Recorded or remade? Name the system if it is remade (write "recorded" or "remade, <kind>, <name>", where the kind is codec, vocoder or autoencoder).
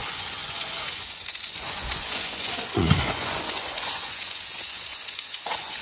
remade, vocoder, Vocos